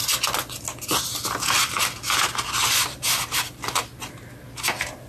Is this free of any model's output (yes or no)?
yes